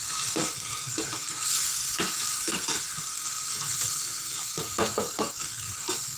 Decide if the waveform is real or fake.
fake